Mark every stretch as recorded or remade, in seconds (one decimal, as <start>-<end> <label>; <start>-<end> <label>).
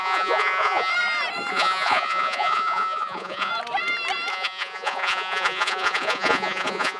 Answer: 0.0-0.9 remade; 0.9-1.5 recorded; 1.5-3.5 remade; 3.5-4.3 recorded; 4.3-7.0 remade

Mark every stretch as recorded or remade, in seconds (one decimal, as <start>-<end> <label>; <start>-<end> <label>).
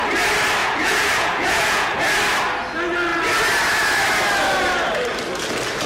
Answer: 0.0-0.6 recorded; 0.6-2.0 remade; 2.0-5.9 recorded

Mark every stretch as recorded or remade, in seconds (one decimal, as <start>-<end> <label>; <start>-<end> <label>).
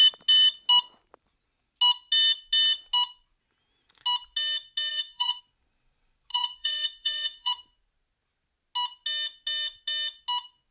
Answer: 0.0-4.9 recorded; 4.9-5.4 remade; 5.4-6.3 recorded; 6.3-7.5 remade; 7.5-10.7 recorded